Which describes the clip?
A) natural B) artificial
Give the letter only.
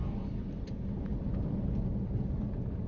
A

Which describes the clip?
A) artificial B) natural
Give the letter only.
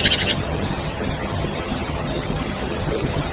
A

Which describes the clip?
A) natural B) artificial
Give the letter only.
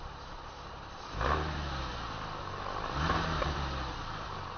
A